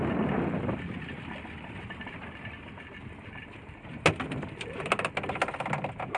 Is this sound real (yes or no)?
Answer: yes